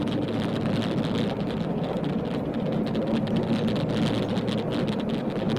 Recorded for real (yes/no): yes